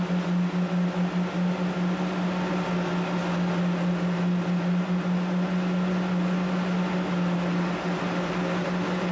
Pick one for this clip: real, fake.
real